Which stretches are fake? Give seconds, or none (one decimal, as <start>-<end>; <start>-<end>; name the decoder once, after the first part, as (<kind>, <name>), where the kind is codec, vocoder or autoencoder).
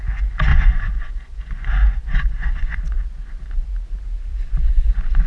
0.5-3.7 (vocoder, Vocos); 4.3-5.3